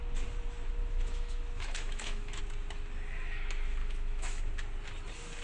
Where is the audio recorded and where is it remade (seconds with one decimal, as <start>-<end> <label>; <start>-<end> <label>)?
0.0-0.8 recorded; 0.8-2.4 remade; 2.4-3.8 recorded; 3.8-4.4 remade; 4.4-5.4 recorded